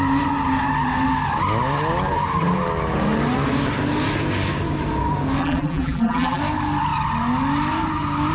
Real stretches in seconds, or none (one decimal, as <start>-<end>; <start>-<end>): 0.0-5.4; 6.4-8.3